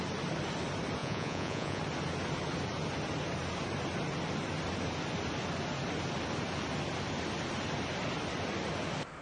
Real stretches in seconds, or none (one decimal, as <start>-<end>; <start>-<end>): 0.0-1.0; 1.8-9.2